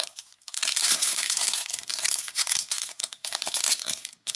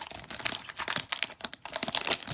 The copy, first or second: first